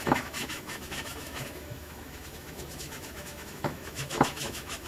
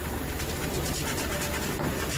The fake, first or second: first